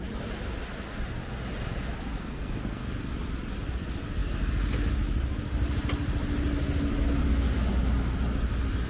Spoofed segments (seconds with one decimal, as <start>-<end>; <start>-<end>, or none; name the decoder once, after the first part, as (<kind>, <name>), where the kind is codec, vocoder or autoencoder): 2.2-2.9 (codec, SNAC)